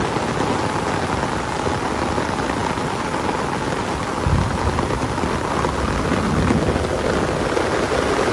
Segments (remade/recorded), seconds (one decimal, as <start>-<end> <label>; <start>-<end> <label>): 0.0-8.3 recorded